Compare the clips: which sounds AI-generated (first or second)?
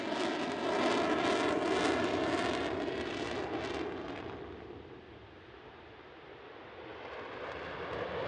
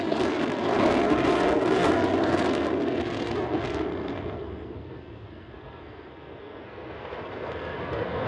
second